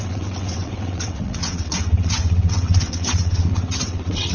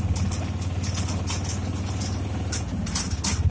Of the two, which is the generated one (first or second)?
first